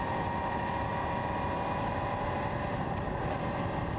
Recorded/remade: recorded